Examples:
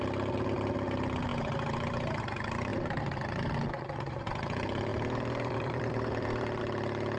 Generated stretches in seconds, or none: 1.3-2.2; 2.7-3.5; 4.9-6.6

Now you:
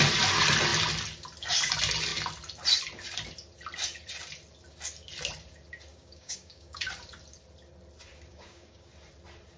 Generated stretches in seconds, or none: 5.9-6.9; 8.3-8.9